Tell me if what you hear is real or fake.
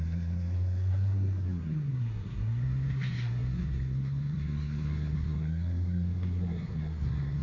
fake